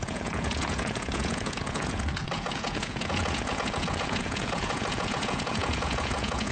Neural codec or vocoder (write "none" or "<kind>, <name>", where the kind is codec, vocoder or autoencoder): vocoder, Vocos